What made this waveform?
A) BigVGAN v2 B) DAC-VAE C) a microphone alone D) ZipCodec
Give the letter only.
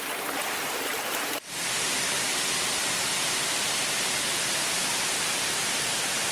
C